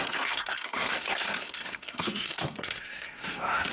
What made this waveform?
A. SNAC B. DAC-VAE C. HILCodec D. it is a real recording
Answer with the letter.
A